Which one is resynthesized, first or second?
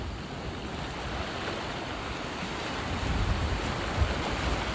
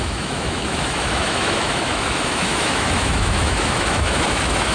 second